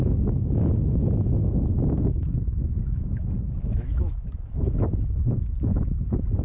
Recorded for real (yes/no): no